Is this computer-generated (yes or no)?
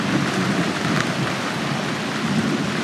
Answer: no